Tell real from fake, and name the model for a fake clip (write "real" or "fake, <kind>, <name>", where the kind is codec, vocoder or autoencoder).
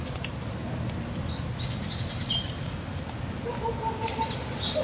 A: real